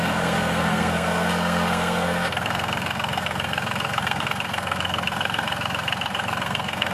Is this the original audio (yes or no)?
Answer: no